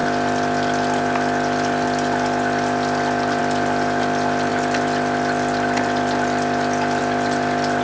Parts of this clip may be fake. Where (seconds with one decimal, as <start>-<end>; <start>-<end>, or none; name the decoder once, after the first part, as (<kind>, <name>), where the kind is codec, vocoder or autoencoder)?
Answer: none